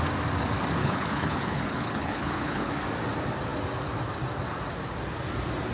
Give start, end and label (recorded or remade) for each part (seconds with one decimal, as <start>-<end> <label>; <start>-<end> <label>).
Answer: 0.0-0.8 recorded; 0.8-2.7 remade; 2.7-5.7 recorded